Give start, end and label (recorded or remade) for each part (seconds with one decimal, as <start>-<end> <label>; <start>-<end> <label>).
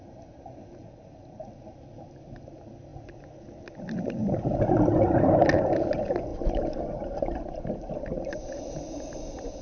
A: 0.0-9.6 recorded